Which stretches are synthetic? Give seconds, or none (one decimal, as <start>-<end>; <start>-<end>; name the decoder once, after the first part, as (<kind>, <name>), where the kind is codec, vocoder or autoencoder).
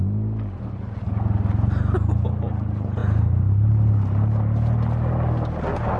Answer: none